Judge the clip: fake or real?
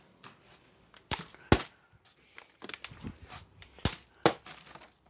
real